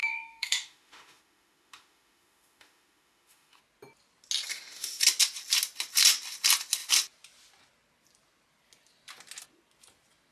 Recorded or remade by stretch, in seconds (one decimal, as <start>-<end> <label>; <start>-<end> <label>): 0.0-3.6 remade; 3.6-4.5 recorded; 4.5-5.0 remade; 5.0-10.3 recorded